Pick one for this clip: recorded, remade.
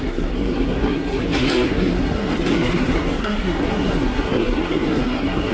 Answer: remade